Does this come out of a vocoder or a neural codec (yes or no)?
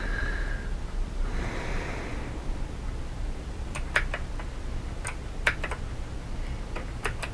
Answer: no